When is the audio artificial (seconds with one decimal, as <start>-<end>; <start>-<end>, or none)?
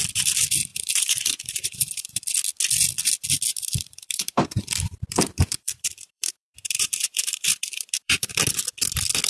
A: 0.7-2.2; 3.5-8.4